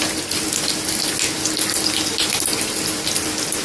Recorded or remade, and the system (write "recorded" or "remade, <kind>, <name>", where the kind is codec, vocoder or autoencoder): recorded